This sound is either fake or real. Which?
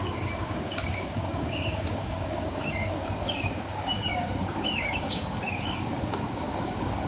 fake